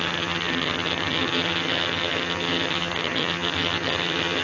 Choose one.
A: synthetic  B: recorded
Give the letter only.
A